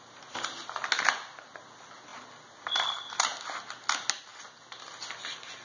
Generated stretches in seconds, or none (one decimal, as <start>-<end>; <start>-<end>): none